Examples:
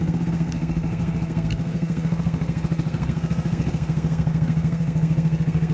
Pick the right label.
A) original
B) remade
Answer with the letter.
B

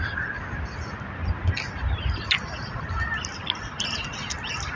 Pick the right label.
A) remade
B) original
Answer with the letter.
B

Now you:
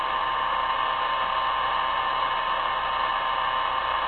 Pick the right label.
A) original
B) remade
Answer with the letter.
A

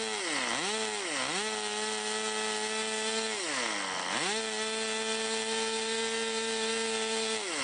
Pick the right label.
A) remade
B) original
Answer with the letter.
B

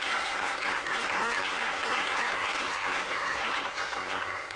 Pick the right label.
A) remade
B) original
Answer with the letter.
A